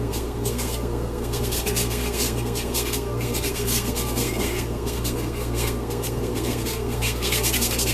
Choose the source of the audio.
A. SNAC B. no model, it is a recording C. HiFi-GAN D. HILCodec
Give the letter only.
A